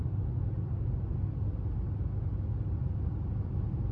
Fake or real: real